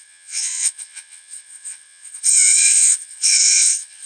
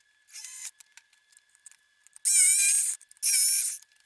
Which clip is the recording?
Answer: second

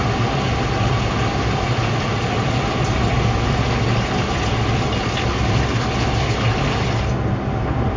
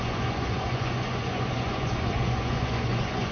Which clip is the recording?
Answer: first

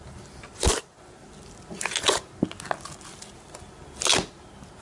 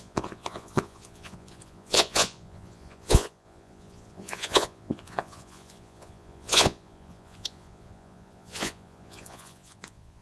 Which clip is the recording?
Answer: first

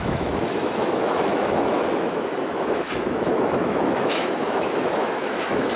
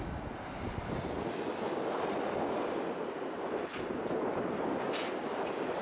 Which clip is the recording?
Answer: second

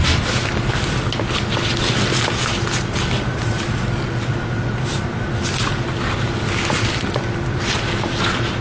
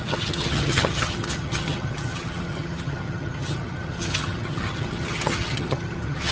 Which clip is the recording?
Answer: first